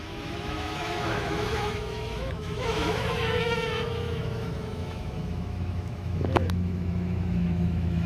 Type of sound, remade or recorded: remade